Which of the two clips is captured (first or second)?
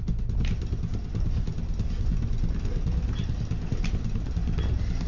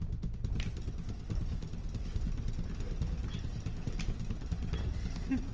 first